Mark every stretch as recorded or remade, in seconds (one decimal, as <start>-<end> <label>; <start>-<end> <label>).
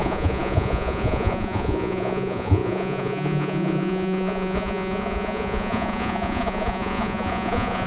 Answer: 0.0-7.9 remade